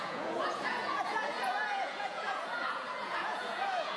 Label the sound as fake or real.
fake